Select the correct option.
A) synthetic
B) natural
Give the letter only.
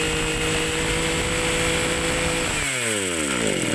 B